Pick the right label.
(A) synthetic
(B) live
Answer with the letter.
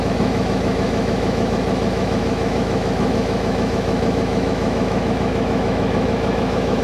A